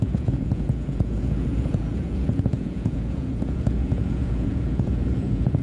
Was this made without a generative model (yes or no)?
no